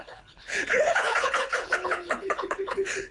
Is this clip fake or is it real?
fake